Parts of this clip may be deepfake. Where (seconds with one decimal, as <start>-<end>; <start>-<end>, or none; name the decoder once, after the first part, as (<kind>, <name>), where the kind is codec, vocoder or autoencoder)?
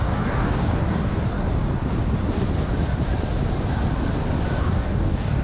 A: 0.0-1.4 (codec, DAC); 4.6-5.4